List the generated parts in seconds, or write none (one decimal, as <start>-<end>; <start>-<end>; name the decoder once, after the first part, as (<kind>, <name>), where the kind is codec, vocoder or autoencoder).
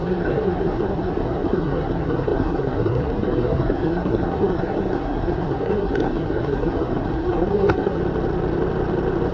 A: 0.0-8.0 (codec, SNAC)